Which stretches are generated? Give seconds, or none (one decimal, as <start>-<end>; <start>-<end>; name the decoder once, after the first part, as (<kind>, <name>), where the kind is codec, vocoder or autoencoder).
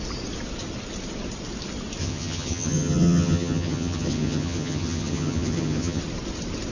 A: 2.0-6.0 (vocoder, HiFi-GAN)